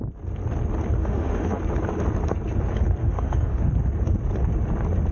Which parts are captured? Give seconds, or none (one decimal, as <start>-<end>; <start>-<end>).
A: 0.0-1.0; 1.6-3.0; 3.7-5.1